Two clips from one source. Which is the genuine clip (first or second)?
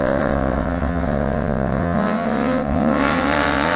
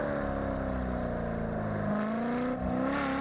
second